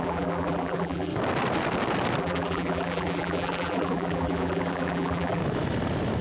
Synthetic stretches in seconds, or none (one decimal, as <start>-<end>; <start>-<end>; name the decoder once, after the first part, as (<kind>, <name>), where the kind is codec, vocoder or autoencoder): 0.0-1.1 (vocoder, BigVGAN v2); 2.2-5.4